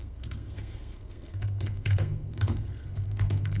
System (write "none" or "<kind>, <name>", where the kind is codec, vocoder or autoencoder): codec, SNAC